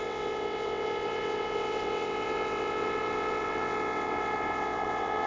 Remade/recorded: remade